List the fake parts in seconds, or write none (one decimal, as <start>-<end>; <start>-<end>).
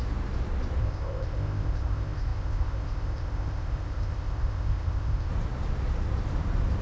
0.8-5.3